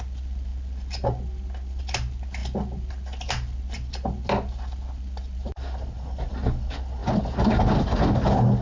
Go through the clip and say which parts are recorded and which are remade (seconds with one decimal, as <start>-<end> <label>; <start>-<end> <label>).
0.0-8.6 recorded